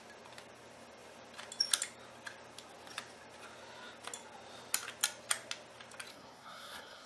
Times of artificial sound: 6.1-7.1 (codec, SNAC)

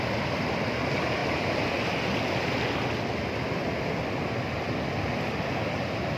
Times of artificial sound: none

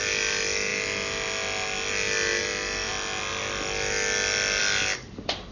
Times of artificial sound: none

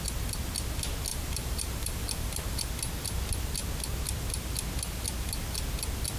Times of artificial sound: 1.1-2.7 (vocoder, BigVGAN v2)

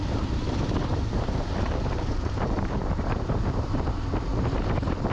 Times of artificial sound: 0.9-4.0 (vocoder, BigVGAN v2)

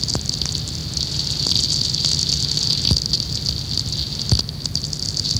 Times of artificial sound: none